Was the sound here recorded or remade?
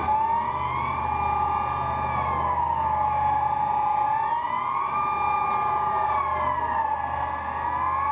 recorded